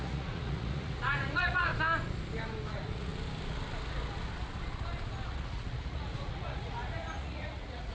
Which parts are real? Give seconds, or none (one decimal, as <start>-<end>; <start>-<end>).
1.7-2.7; 3.1-5.3